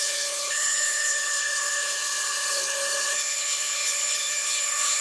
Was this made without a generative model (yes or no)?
no